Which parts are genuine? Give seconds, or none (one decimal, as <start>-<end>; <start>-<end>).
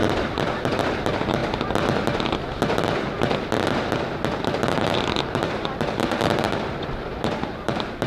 1.4-4.4